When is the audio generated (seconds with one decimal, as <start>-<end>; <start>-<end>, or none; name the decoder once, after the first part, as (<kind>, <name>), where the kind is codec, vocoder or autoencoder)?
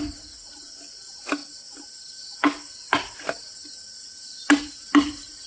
none